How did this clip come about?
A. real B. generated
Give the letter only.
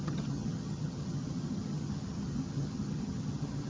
B